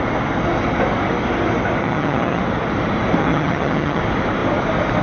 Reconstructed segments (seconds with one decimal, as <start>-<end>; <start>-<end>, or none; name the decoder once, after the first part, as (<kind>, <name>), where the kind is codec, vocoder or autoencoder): 1.8-2.4 (vocoder, HiFi-GAN); 3.2-4.0